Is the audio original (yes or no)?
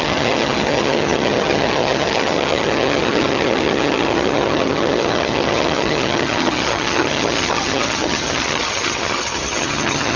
no